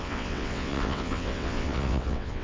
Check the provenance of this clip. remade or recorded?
remade